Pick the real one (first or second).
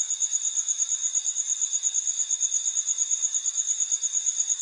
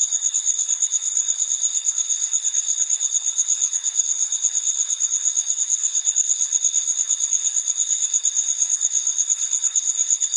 first